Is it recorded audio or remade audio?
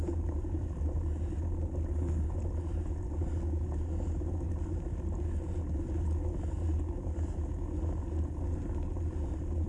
recorded